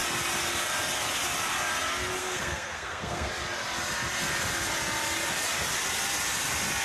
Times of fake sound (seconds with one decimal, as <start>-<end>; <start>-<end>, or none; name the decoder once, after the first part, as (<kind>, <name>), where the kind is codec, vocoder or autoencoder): 2.2-3.3 (codec, SNAC)